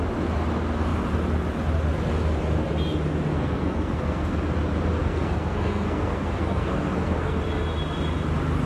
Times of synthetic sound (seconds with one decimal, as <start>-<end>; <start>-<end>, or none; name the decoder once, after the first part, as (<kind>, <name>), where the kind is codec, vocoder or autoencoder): 3.3-4.5 (codec, SNAC); 4.9-7.4